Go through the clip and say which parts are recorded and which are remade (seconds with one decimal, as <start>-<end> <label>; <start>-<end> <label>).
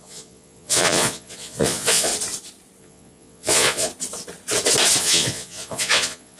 0.0-2.1 remade; 2.1-2.8 recorded; 2.8-3.9 remade; 3.9-5.0 recorded; 5.0-6.4 remade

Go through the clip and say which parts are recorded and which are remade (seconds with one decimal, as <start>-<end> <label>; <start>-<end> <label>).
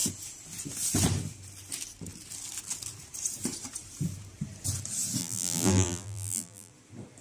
0.0-5.2 recorded; 5.2-6.7 remade; 6.7-7.2 recorded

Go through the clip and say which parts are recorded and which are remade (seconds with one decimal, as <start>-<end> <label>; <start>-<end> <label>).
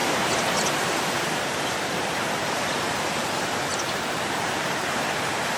0.0-5.6 remade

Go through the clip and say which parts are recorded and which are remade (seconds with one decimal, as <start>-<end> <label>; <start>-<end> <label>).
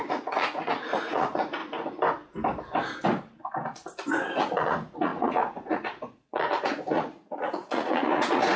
0.0-1.6 remade; 1.6-4.4 recorded; 4.4-8.6 remade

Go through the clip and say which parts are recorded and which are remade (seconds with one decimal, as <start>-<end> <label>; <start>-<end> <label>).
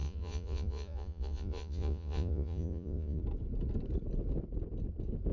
0.0-3.2 remade; 3.2-5.3 recorded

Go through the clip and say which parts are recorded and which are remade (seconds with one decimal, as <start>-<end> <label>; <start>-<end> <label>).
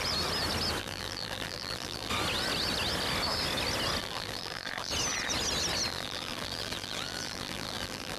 0.0-0.8 recorded; 0.8-2.1 remade; 2.1-4.0 recorded; 4.0-4.9 remade; 4.9-5.9 recorded; 5.9-8.2 remade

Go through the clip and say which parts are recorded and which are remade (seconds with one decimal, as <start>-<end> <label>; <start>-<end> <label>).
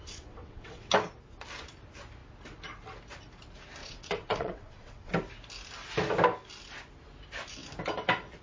0.0-0.9 remade; 0.9-3.8 recorded; 3.8-5.1 remade; 5.1-8.4 recorded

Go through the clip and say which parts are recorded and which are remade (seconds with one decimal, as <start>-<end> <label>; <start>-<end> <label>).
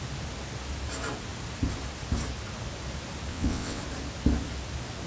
0.0-3.3 recorded; 3.3-3.8 remade; 3.8-5.1 recorded